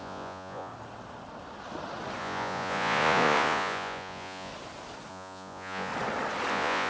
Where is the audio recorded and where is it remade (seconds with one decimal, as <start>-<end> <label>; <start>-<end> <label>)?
0.0-0.7 remade; 0.7-2.2 recorded; 2.2-4.5 remade; 4.5-5.1 recorded; 5.1-5.9 remade; 5.9-6.5 recorded; 6.5-6.9 remade